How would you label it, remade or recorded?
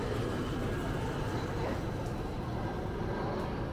recorded